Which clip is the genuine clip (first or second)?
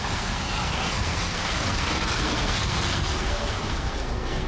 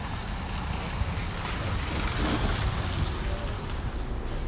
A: second